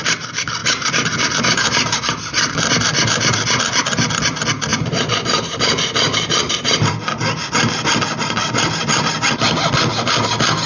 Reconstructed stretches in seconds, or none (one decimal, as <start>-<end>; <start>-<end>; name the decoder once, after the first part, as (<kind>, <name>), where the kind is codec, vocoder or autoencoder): 0.6-2.7 (vocoder, BigVGAN v2); 4.7-6.9